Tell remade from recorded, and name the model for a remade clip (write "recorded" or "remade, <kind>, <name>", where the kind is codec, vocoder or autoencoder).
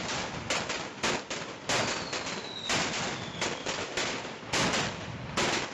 recorded